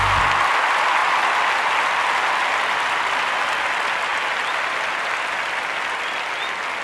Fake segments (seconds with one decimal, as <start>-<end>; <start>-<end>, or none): none